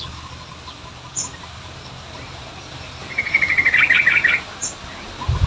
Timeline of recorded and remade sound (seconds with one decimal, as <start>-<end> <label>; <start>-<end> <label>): 0.0-5.5 recorded